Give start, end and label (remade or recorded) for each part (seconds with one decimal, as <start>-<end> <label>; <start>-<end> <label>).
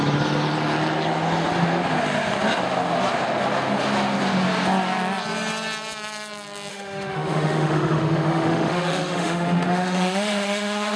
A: 0.0-6.7 recorded; 6.7-11.0 remade